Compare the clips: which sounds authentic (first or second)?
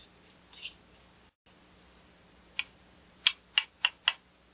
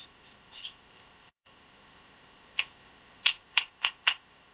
first